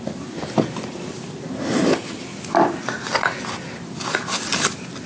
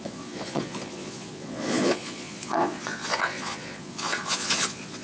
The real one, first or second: first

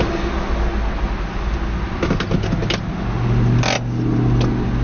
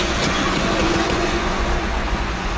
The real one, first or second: first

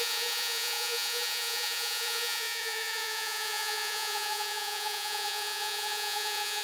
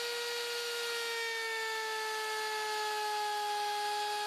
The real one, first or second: second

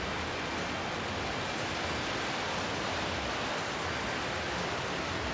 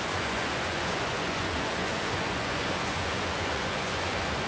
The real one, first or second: first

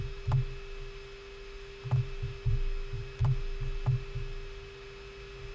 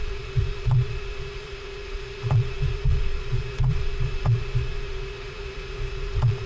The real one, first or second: first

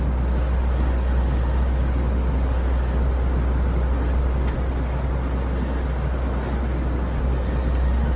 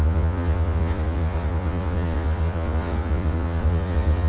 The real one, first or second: first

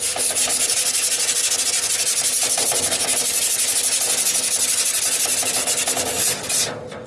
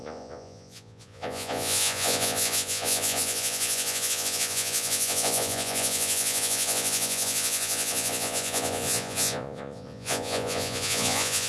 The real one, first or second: first